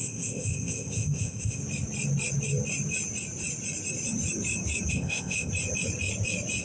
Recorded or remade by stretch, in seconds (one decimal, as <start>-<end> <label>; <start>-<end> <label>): 0.0-1.6 remade; 1.6-4.9 recorded; 4.9-5.5 remade; 5.5-6.6 recorded